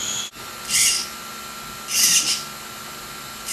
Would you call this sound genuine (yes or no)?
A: yes